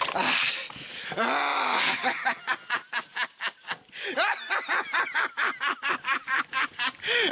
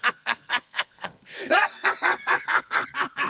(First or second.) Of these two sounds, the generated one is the second